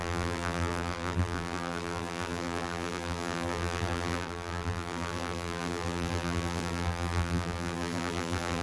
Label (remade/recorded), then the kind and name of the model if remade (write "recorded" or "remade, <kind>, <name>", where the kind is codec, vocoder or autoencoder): remade, vocoder, BigVGAN v2